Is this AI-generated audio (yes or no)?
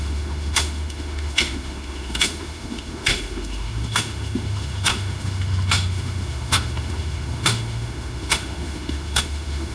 yes